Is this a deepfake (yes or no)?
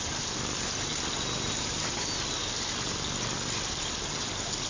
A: no